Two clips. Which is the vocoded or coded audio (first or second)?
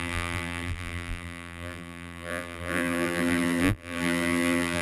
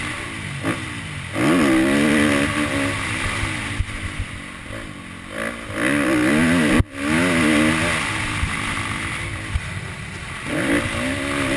first